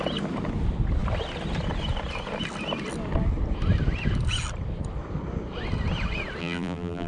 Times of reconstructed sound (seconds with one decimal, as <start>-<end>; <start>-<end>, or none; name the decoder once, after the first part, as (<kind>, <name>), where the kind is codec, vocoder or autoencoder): 6.4-7.1 (vocoder, BigVGAN v2)